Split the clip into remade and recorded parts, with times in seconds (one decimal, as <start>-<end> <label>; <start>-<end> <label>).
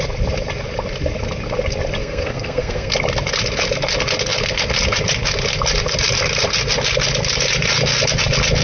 0.0-2.0 recorded; 2.0-2.9 remade; 2.9-8.6 recorded